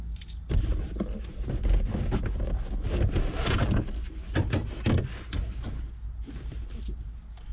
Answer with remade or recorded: recorded